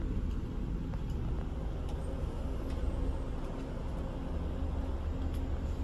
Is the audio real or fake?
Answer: real